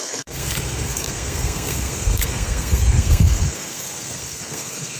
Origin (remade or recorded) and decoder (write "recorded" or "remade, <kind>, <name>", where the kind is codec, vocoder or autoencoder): remade, codec, SNAC